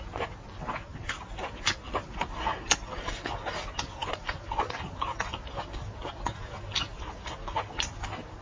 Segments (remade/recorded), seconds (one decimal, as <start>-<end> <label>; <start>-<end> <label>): 0.0-8.4 recorded